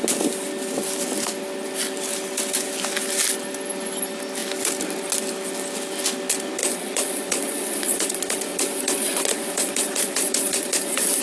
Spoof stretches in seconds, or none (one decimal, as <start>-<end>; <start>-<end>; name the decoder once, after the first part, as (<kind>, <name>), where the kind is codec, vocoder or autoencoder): 6.6-11.2 (vocoder, Vocos)